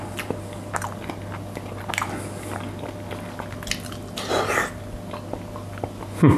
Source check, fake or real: real